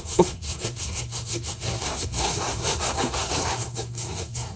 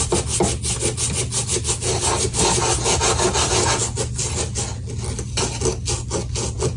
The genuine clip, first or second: second